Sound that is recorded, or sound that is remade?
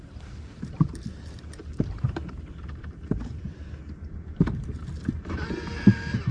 recorded